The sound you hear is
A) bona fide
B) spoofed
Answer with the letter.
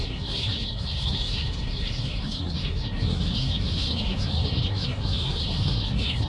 B